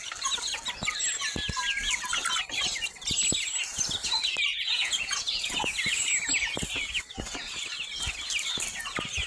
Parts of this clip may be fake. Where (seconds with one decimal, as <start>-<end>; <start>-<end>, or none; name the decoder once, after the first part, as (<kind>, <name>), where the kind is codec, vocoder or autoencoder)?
4.5-5.6 (vocoder, Vocos)